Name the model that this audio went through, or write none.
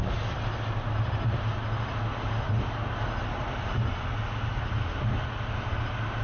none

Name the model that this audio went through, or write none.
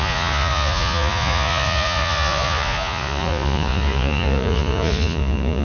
vocoder, Vocos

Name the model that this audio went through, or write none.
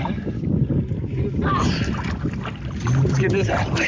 none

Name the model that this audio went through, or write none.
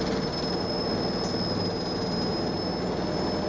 none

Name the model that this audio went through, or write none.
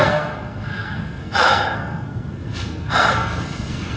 codec, SNAC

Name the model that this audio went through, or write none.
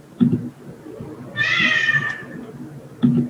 none